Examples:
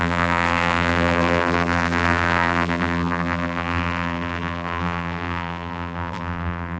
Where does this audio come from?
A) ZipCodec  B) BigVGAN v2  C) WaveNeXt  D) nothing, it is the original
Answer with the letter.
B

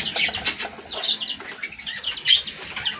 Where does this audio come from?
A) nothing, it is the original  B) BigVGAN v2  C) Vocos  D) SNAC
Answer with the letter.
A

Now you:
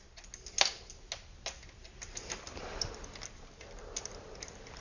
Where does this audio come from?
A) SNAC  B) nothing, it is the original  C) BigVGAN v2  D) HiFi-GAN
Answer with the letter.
B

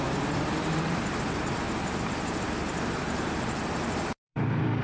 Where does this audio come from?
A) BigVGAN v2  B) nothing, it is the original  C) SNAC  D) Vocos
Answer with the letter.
A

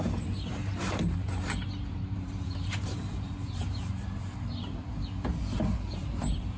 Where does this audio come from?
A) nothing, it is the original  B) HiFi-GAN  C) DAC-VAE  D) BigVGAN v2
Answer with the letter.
D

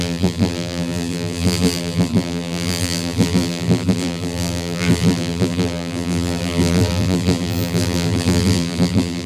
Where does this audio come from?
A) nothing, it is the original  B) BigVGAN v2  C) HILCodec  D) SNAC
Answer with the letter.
B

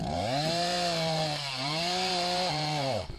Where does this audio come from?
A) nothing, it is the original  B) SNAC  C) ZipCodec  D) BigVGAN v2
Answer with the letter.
D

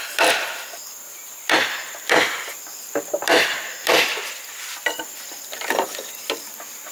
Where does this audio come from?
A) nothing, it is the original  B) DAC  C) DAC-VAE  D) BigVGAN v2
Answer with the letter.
D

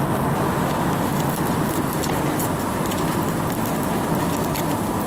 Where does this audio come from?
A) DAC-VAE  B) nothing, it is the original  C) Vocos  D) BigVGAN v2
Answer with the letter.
B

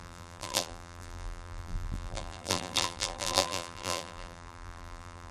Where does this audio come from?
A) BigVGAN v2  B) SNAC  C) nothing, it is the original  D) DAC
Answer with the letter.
A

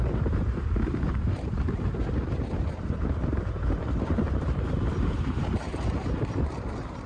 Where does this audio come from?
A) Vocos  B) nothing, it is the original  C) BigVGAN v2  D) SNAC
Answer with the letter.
C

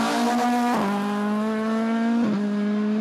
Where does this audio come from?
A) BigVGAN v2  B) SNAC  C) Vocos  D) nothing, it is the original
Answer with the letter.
D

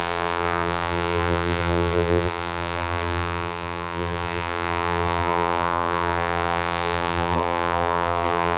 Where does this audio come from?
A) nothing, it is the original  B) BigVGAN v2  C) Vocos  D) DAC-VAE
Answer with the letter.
B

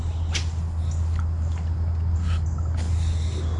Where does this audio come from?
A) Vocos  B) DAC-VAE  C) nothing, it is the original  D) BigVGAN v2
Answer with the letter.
C